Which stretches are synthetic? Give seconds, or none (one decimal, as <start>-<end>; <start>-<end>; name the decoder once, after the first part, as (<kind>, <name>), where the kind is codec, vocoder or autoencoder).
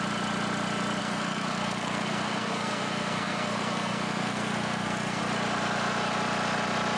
1.0-5.2 (codec, SNAC)